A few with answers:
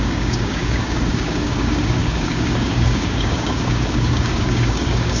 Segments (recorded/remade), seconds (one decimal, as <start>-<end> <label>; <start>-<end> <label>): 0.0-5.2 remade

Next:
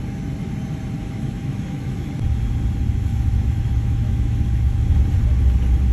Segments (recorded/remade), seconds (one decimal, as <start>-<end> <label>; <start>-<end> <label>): 0.0-1.0 recorded; 1.0-2.1 remade; 2.1-3.1 recorded; 3.1-4.9 remade; 4.9-5.9 recorded

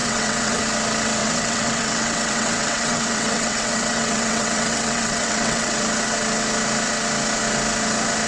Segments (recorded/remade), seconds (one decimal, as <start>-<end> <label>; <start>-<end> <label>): 0.0-0.6 remade; 0.6-1.2 recorded; 1.2-5.8 remade; 5.8-8.3 recorded

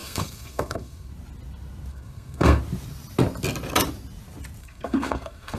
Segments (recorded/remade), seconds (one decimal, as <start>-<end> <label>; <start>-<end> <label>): 0.0-1.1 remade; 1.1-1.9 recorded; 1.9-2.6 remade; 2.6-4.6 recorded; 4.6-5.6 remade

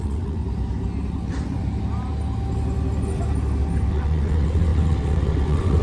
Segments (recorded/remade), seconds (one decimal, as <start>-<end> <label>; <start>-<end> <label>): 0.0-0.4 remade; 0.4-3.9 recorded; 3.9-5.8 remade

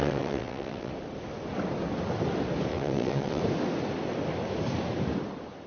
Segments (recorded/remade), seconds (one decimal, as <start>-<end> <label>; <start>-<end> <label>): 0.0-0.9 remade; 0.9-2.7 recorded; 2.7-3.4 remade; 3.4-5.7 recorded